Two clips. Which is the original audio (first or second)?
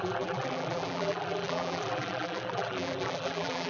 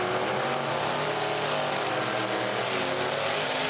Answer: second